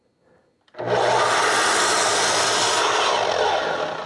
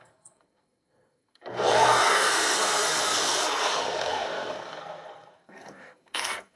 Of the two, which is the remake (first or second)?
second